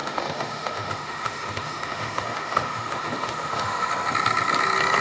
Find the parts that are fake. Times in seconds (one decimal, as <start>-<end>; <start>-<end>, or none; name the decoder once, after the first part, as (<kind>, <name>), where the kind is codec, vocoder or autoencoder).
0.0-3.9 (autoencoder, DAC-VAE)